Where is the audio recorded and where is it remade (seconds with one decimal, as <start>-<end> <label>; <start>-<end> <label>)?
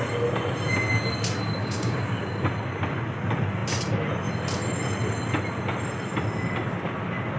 0.0-1.6 recorded; 1.6-2.2 remade; 2.2-7.4 recorded